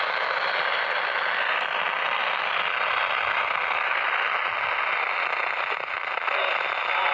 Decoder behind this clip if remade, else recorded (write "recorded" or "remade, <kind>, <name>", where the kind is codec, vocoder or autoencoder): recorded